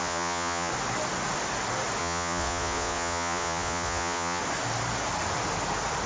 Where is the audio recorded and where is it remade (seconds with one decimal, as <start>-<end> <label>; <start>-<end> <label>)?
0.0-0.7 remade; 0.7-2.0 recorded; 2.0-4.4 remade; 4.4-6.1 recorded